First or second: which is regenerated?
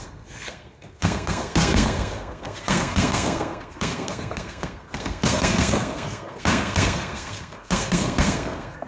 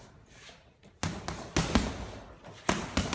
first